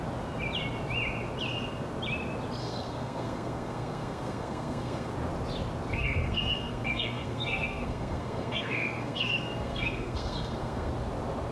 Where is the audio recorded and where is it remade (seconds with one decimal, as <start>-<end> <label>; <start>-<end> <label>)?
0.0-2.6 recorded; 2.6-5.1 remade; 5.1-5.9 recorded; 5.9-10.9 remade; 10.9-11.5 recorded